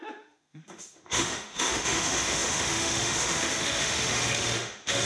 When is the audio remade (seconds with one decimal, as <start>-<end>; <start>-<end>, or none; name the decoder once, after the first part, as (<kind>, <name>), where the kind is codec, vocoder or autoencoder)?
0.0-5.1 (autoencoder, DAC-VAE)